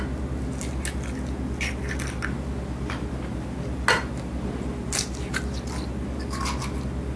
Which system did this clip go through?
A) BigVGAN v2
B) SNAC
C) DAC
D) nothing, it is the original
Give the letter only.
D